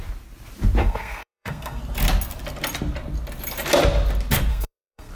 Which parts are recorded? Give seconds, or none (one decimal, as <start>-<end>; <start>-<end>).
0.0-0.8; 1.8-4.5